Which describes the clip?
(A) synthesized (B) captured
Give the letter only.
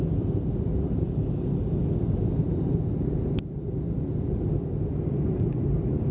B